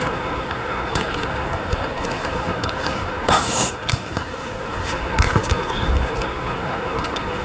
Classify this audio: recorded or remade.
remade